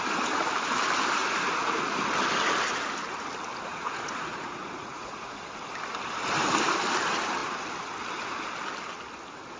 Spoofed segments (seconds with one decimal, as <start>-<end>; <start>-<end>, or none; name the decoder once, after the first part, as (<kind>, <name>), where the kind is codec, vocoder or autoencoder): 1.2-2.0 (vocoder, Vocos); 3.7-5.4

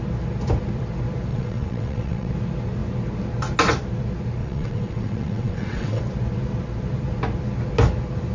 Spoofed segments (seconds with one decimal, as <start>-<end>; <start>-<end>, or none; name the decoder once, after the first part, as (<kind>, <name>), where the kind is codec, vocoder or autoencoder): 1.3-2.3 (vocoder, WaveNeXt); 4.4-6.0

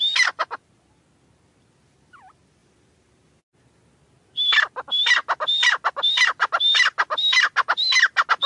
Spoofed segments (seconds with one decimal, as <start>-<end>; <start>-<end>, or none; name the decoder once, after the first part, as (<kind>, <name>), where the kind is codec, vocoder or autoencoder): none